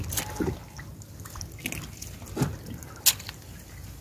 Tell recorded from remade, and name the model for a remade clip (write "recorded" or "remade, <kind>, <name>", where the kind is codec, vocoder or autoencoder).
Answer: recorded